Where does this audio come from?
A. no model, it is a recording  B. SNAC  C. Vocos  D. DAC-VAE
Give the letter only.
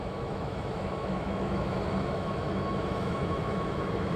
D